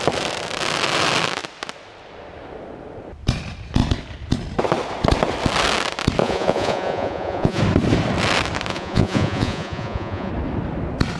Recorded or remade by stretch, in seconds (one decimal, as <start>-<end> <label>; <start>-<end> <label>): 0.0-6.2 recorded; 6.2-7.6 remade; 7.6-8.7 recorded; 8.7-10.3 remade; 10.3-11.2 recorded